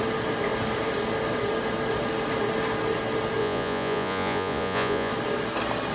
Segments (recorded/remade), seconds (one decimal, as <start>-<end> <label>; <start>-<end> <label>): 0.0-3.4 recorded; 3.4-5.1 remade; 5.1-5.9 recorded